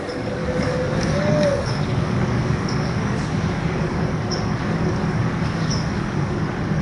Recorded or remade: remade